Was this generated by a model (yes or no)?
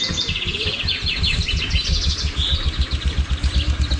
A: no